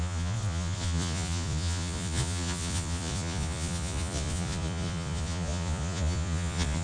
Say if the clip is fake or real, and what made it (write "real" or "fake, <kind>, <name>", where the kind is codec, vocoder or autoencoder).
fake, vocoder, Vocos